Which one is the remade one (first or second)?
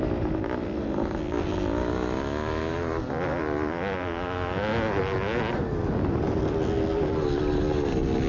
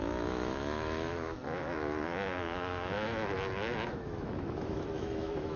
second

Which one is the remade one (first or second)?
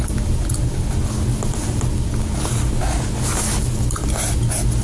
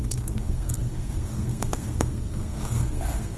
second